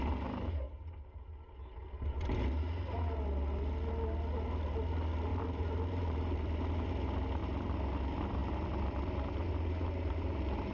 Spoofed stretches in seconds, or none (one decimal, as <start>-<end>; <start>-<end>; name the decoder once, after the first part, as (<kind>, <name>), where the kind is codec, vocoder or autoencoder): 5.3-6.9 (vocoder, BigVGAN v2)